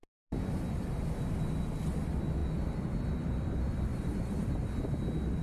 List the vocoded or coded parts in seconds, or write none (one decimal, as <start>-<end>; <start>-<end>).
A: 3.9-4.6